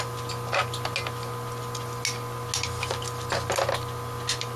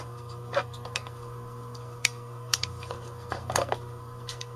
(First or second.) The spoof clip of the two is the second